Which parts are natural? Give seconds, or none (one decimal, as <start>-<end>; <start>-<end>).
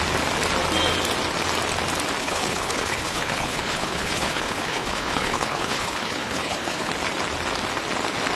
0.0-2.2; 6.9-8.4